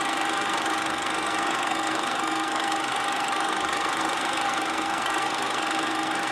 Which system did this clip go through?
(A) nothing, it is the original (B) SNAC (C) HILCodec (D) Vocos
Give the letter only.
B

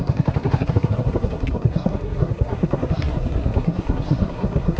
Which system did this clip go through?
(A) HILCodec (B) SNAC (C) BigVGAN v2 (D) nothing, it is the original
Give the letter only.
B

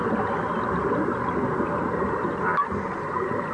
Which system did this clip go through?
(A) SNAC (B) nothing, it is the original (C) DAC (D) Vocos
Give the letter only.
B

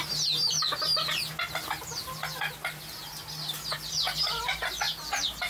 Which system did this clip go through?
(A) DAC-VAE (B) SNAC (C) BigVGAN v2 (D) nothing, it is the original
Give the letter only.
D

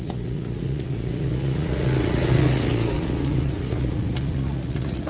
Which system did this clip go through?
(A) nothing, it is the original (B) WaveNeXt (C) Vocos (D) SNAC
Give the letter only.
C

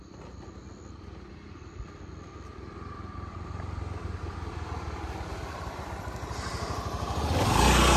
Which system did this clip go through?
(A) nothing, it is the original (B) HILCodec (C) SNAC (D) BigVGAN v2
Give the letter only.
A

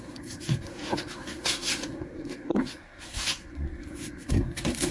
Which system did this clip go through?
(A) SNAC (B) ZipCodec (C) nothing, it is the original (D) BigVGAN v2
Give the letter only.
A